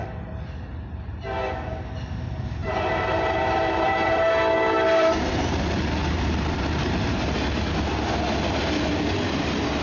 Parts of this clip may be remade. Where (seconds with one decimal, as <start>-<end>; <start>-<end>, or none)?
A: 2.6-5.6; 6.0-7.2